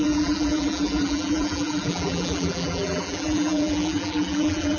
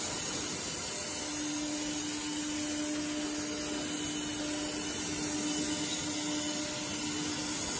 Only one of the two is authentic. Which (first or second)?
second